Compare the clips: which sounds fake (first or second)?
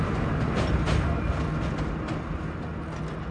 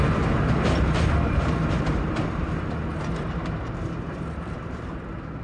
second